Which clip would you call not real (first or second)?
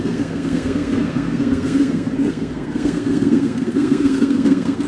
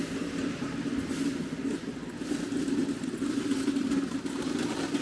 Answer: first